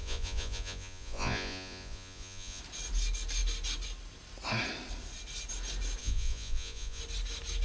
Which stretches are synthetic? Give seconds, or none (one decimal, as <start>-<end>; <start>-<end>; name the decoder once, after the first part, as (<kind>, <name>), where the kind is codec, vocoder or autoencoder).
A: 0.0-2.6 (vocoder, Vocos); 6.0-7.0